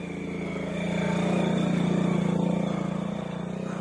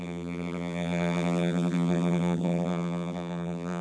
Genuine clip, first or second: first